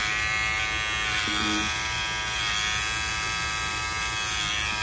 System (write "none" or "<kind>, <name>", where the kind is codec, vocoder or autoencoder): none